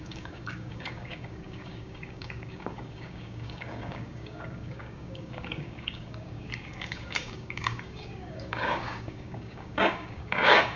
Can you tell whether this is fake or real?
fake